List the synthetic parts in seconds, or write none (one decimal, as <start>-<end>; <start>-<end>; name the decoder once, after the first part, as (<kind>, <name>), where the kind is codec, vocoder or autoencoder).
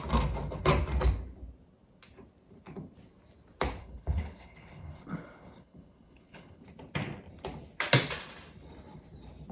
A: 3.8-6.6 (codec, HILCodec)